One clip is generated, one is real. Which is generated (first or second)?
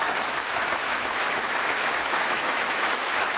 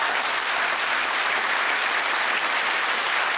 first